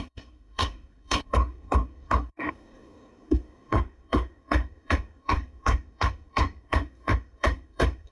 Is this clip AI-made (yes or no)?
yes